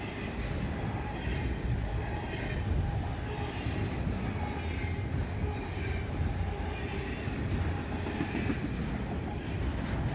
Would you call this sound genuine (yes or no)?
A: yes